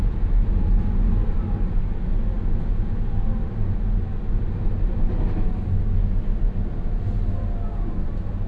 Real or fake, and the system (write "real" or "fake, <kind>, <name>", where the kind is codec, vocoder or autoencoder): real